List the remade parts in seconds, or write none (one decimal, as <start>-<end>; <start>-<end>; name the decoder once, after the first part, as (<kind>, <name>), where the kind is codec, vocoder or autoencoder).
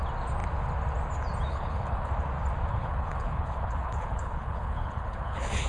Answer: 1.5-2.1 (codec, HILCodec); 2.7-5.7